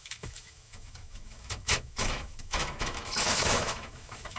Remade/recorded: remade